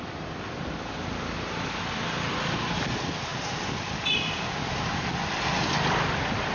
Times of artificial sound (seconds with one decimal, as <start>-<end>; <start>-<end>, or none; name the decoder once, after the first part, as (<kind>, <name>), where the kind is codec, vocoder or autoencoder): none